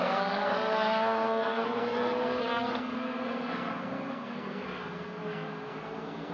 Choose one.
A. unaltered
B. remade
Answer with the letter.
B